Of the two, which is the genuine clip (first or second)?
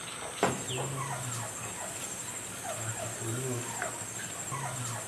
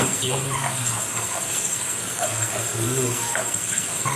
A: first